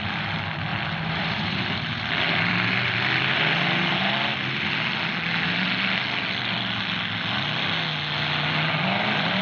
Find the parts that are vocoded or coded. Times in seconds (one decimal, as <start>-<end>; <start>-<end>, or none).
none